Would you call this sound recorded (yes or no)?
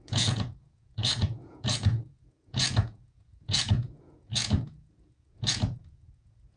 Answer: no